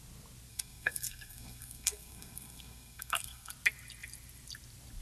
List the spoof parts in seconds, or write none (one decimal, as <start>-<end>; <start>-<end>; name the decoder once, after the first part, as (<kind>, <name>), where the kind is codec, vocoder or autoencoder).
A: 0.5-3.5 (codec, SNAC)